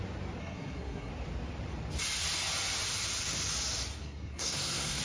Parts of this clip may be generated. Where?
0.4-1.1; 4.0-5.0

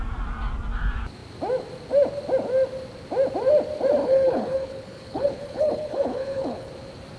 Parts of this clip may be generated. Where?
4.0-6.7